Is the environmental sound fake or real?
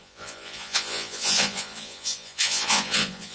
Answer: fake